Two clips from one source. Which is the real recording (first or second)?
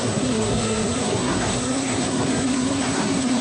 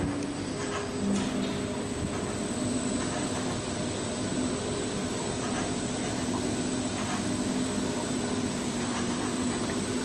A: second